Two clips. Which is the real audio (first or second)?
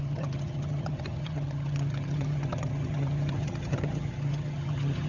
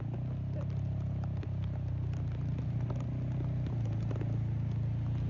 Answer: second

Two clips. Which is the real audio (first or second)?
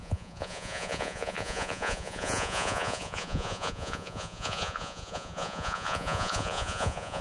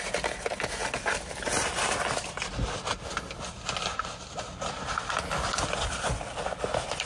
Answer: second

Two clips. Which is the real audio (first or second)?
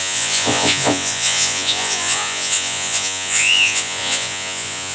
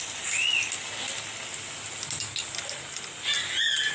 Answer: second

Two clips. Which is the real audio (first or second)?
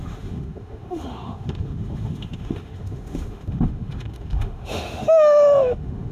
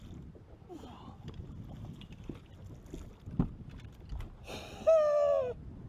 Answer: second